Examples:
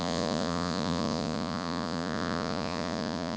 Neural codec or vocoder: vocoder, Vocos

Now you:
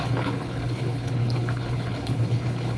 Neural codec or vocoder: codec, HILCodec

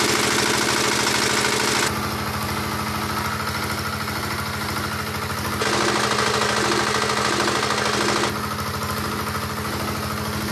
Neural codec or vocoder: none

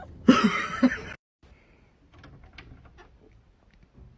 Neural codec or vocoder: none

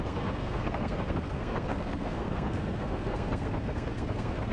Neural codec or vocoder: codec, SNAC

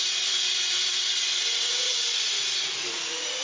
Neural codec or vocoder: vocoder, Vocos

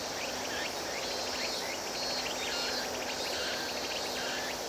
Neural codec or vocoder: none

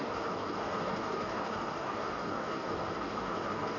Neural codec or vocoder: codec, DAC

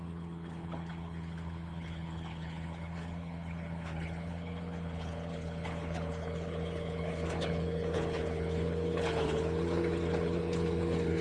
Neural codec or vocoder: codec, HILCodec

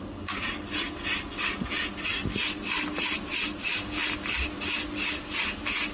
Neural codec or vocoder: none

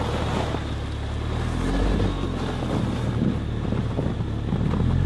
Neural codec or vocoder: none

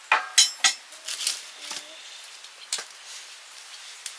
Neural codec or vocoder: none